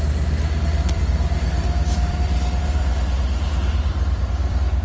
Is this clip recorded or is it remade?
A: remade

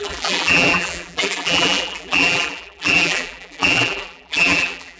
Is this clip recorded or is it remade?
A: remade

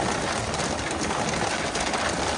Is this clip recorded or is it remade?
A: recorded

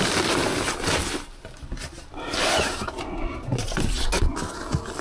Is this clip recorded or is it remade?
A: recorded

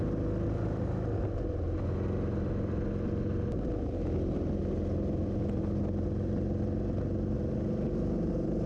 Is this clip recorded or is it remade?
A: recorded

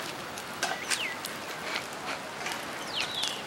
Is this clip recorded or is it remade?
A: recorded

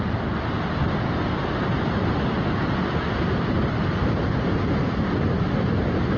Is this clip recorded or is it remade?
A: recorded